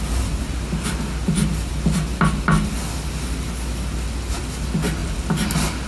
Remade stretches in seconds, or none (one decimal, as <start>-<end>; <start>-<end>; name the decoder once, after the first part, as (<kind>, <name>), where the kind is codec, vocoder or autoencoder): none